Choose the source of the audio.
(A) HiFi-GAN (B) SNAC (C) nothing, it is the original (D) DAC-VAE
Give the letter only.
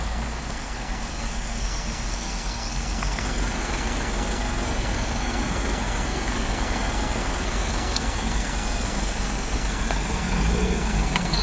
B